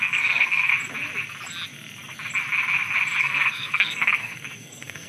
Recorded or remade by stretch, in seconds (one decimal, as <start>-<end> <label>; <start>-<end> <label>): 0.0-0.7 remade; 0.7-3.2 recorded; 3.2-5.1 remade